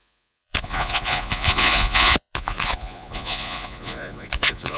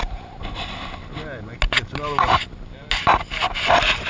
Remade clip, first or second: first